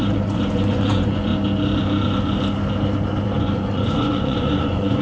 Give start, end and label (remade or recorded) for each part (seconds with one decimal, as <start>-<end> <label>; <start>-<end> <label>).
0.0-1.3 remade; 1.3-3.2 recorded; 3.2-5.0 remade